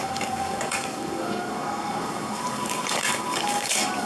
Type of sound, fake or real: fake